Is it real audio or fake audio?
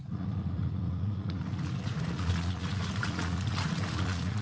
fake